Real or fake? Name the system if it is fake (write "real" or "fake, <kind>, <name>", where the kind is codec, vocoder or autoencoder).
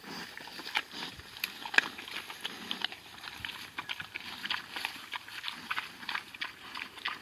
real